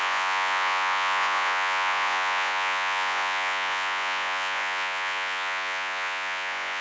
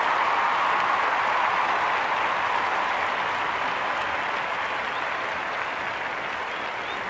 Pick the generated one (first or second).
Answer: first